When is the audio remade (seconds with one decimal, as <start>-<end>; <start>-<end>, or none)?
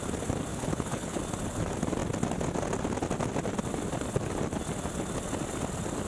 0.5-1.2